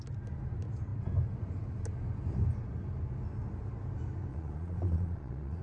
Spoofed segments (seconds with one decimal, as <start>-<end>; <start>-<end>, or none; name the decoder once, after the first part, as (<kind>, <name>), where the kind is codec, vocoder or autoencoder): 4.3-5.6 (vocoder, Vocos)